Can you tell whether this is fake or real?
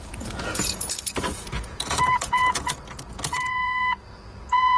fake